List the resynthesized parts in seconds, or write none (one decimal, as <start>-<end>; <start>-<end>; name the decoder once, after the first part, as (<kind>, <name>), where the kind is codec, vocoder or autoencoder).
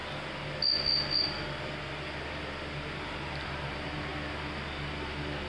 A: 3.3-4.1 (vocoder, BigVGAN v2)